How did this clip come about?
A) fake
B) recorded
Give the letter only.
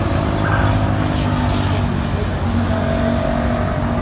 B